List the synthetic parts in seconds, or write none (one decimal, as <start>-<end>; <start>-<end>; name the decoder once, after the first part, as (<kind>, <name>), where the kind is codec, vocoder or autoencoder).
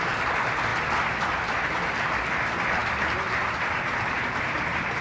0.0-0.7 (vocoder, BigVGAN v2); 1.5-5.0